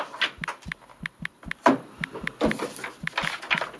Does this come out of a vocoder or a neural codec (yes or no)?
no